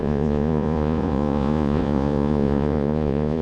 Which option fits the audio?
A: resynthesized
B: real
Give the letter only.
A